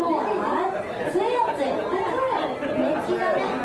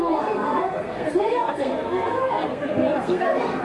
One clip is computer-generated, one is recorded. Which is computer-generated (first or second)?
second